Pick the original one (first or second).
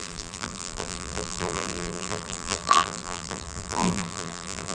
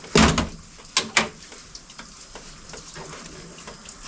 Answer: second